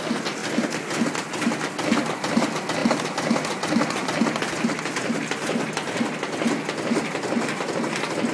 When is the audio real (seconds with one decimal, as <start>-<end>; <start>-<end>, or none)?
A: 0.0-8.3